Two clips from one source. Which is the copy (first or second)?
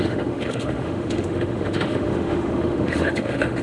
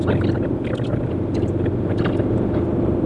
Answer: first